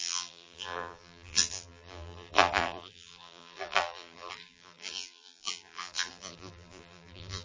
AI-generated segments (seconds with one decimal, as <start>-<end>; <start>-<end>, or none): 0.0-7.4